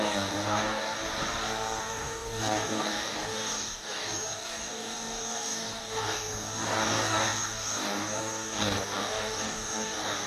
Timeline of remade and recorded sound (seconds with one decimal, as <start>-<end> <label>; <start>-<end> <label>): 0.0-1.0 remade; 1.0-1.8 recorded; 1.8-10.3 remade